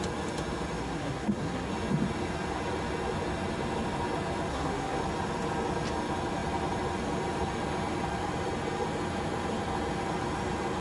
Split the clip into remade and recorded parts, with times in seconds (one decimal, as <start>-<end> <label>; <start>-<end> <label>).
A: 0.0-0.8 recorded; 0.8-1.7 remade; 1.7-4.5 recorded; 4.5-5.0 remade; 5.0-10.8 recorded